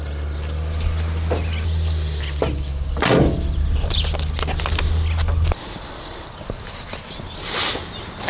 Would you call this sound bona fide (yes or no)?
yes